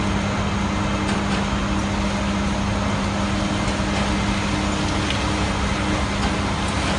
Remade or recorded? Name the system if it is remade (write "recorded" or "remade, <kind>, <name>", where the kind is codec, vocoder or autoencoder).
recorded